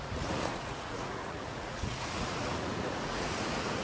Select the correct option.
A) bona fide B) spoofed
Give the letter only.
B